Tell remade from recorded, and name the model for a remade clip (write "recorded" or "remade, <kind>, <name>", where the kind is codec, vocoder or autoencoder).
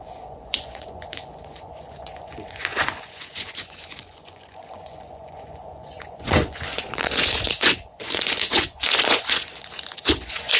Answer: remade, vocoder, Vocos